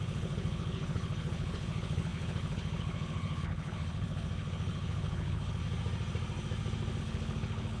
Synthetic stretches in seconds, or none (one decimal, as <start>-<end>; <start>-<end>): 0.0-5.6; 7.0-7.8

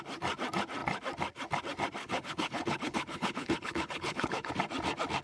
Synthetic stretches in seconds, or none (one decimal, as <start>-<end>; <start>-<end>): 2.0-4.5

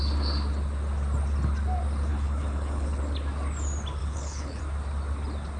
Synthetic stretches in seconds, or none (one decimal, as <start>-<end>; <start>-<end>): 2.1-3.0; 4.0-4.6

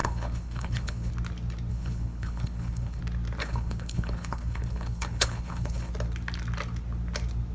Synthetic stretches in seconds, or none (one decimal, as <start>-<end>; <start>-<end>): 0.0-1.1; 1.7-3.0; 3.4-5.9

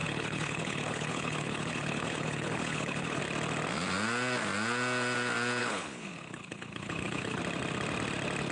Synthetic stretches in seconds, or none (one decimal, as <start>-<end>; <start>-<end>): 0.0-3.2; 5.6-7.4

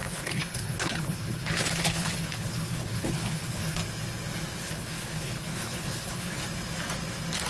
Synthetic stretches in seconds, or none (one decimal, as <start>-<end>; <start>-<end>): 0.0-3.8; 4.6-6.4

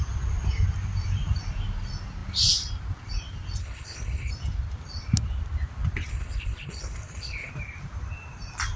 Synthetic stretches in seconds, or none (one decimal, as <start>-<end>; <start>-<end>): 3.6-4.3; 6.1-7.5

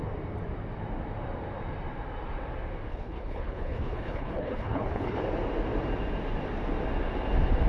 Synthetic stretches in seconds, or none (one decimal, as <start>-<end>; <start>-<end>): 2.9-5.2